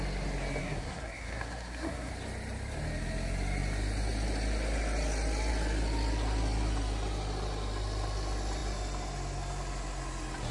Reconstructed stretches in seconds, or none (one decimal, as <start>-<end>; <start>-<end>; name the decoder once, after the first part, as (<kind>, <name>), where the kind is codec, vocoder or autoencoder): 0.6-2.1 (codec, SNAC)